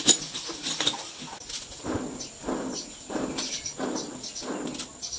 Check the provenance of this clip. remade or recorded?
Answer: recorded